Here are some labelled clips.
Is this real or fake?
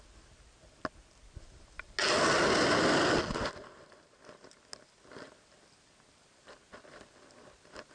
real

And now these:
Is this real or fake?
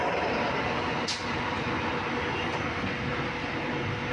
real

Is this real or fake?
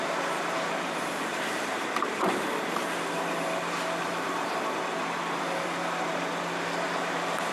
fake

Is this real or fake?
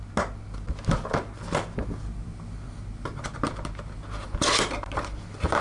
real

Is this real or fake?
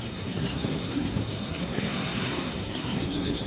fake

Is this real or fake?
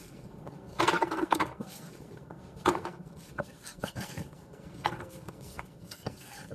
fake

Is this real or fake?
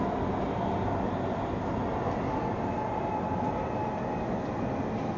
real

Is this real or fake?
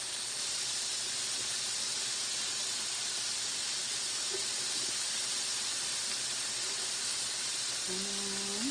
real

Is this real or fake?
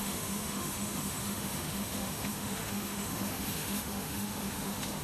fake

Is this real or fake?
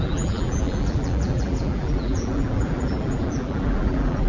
fake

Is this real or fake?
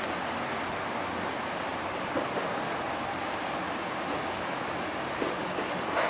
real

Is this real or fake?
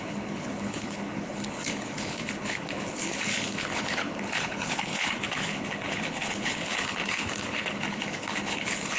fake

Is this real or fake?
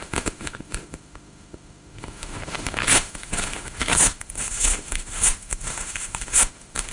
fake